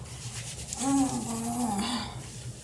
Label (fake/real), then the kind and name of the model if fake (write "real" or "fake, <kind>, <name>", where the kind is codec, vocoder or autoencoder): real